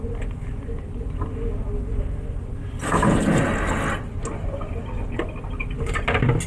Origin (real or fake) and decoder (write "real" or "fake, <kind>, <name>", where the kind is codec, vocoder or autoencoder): real